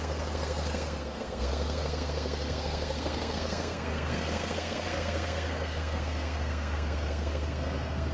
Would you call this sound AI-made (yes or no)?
yes